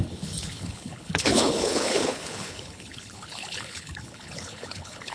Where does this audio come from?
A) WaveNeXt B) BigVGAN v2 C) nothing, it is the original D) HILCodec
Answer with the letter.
D